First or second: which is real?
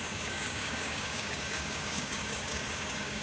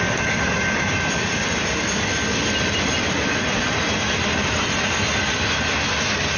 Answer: second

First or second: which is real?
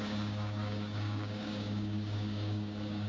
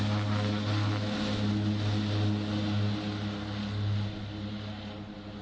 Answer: second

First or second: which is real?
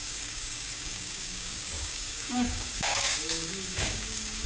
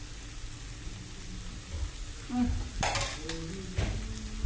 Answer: second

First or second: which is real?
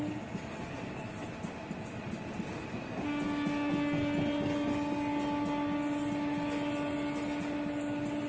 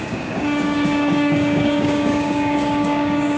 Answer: first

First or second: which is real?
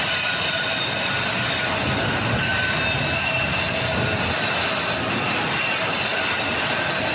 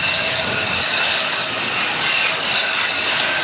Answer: first